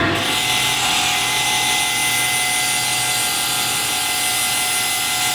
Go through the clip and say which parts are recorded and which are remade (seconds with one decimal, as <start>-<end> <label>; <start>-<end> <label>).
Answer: 0.0-5.3 recorded